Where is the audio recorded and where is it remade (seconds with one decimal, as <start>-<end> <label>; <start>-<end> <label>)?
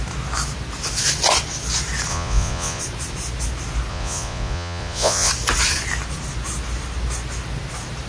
0.0-2.1 recorded; 2.1-2.8 remade; 2.8-3.9 recorded; 3.9-5.3 remade; 5.3-8.1 recorded